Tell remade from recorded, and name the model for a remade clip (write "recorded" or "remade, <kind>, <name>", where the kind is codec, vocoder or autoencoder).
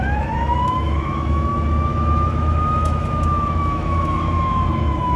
remade, autoencoder, DAC-VAE